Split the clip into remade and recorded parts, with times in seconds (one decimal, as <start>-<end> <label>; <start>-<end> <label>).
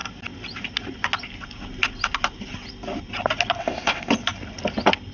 0.0-3.6 recorded; 3.6-4.1 remade; 4.1-5.1 recorded